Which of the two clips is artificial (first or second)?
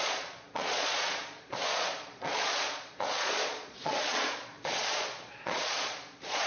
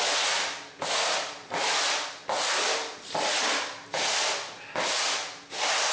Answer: first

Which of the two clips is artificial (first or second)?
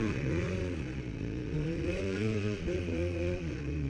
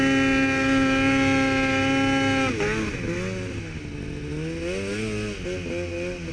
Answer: first